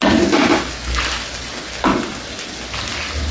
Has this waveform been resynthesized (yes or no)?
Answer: no